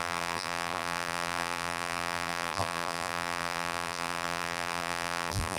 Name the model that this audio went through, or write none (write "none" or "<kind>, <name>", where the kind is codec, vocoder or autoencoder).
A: vocoder, BigVGAN v2